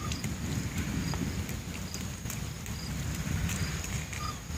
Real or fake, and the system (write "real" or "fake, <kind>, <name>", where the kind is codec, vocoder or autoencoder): real